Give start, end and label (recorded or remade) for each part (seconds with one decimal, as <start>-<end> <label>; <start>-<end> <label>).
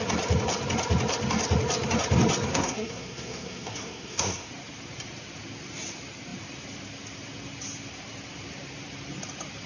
0.0-2.5 recorded; 2.5-4.5 remade; 4.5-9.7 recorded